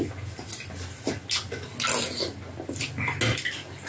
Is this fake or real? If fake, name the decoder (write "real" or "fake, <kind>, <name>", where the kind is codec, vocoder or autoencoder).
real